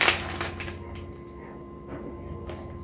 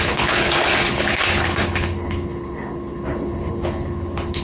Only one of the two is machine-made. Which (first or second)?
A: second